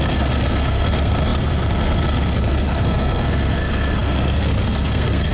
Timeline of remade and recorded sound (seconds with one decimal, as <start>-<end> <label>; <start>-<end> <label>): 0.0-5.3 remade